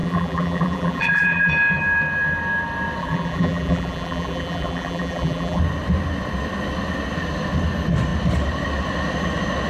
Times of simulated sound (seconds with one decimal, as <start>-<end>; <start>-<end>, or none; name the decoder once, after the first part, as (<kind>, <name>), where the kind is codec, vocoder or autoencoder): 0.0-1.5 (vocoder, BigVGAN v2); 3.0-5.6